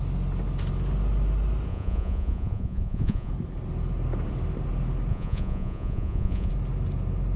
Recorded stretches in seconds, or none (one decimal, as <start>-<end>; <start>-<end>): 0.0-1.7; 3.3-5.1; 6.5-7.4

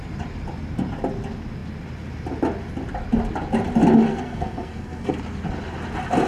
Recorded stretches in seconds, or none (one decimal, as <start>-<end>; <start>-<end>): 0.0-4.1; 5.1-6.3

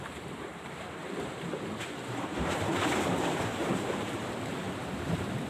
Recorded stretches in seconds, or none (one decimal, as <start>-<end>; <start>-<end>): 4.2-4.8

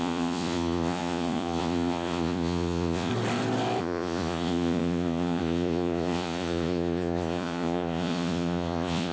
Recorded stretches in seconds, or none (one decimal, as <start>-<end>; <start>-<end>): 3.1-3.8